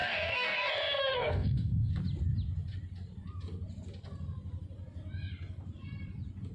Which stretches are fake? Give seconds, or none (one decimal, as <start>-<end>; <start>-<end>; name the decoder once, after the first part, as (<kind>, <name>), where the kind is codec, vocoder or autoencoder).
0.0-0.7 (codec, DAC); 1.1-1.9